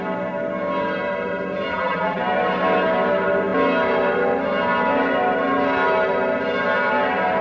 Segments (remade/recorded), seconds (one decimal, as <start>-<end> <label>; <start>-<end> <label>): 0.0-1.7 recorded; 1.7-2.2 remade; 2.2-7.4 recorded